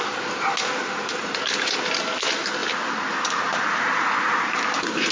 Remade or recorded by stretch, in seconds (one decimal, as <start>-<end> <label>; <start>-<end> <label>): 0.0-0.8 recorded; 0.8-1.4 remade; 1.4-2.6 recorded; 2.6-5.1 remade